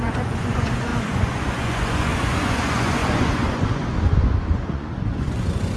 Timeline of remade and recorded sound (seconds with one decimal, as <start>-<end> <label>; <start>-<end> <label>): 0.0-5.8 remade